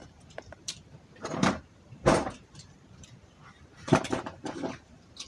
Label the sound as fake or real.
fake